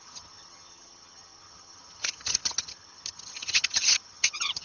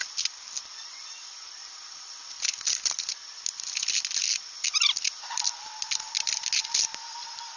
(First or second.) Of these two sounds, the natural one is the second